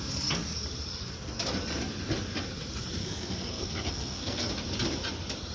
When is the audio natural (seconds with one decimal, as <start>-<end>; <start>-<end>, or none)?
0.0-3.0; 4.5-5.5